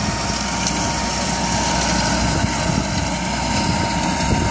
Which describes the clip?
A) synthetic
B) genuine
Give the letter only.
B